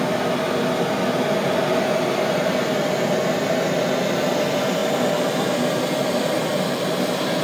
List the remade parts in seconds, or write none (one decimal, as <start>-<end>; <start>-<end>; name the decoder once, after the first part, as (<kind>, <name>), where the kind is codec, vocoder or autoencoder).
4.8-7.0 (vocoder, BigVGAN v2)